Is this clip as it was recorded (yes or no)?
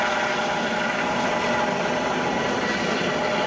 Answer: yes